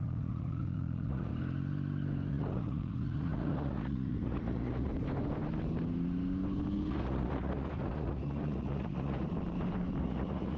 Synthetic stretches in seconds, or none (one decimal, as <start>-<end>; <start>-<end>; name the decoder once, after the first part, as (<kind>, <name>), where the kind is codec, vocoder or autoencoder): 0.0-1.3 (vocoder, Vocos); 2.3-4.9; 6.9-9.3; 10.0-10.6